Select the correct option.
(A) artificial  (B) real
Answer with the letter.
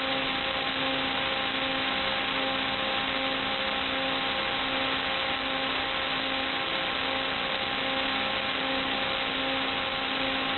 B